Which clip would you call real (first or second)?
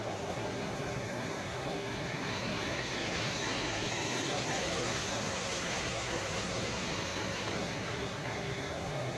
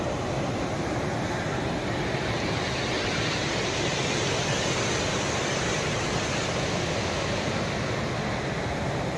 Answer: second